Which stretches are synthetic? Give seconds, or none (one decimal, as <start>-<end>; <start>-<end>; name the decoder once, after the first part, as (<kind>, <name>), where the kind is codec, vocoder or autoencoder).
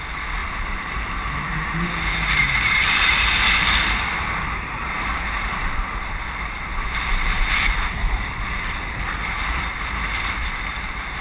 0.0-11.2 (vocoder, BigVGAN v2)